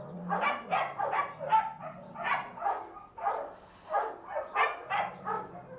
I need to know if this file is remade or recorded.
recorded